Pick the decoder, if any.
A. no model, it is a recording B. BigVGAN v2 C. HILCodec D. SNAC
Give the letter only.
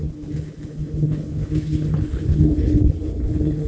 C